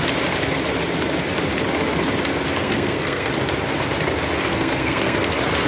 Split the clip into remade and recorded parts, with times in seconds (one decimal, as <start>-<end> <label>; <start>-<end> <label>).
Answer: 0.0-2.6 recorded; 2.6-3.3 remade; 3.3-4.5 recorded; 4.5-5.3 remade; 5.3-5.7 recorded